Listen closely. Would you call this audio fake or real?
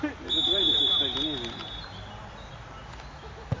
real